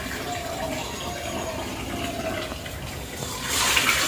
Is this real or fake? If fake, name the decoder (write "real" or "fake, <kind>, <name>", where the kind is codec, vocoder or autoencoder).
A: real